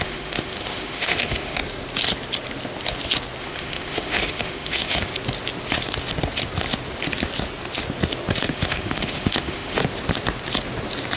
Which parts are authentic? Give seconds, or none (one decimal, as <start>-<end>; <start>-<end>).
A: 1.6-3.4; 5.1-8.4; 9.8-11.2